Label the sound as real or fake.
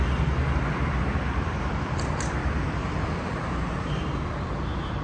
fake